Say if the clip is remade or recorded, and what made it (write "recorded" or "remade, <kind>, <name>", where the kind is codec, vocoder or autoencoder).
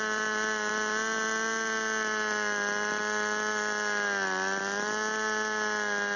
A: recorded